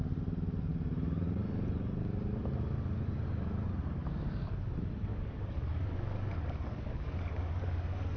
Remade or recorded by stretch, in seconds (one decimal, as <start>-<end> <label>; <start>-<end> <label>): 0.0-4.0 recorded; 4.0-4.6 remade; 4.6-5.1 recorded; 5.1-8.2 remade